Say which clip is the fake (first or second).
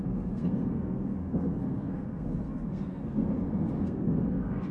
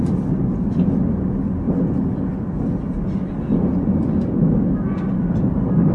first